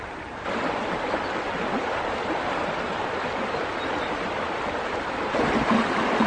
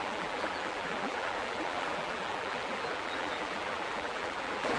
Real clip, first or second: first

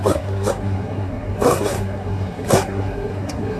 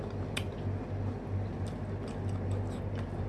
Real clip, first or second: second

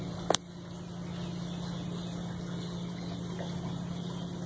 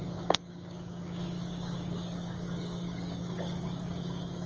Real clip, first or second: first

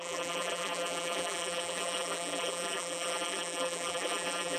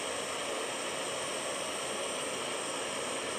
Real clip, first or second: second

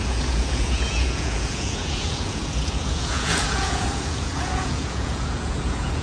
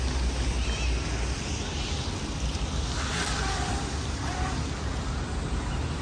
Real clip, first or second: second